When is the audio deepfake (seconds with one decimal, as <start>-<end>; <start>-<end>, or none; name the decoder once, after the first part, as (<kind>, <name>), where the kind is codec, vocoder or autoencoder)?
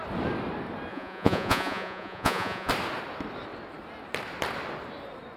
0.9-2.7 (vocoder, Vocos)